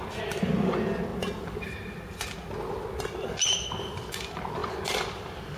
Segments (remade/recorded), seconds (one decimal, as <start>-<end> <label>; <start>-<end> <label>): 0.0-5.6 recorded